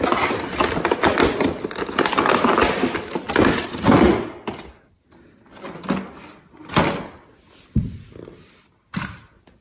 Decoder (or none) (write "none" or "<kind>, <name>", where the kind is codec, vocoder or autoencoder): none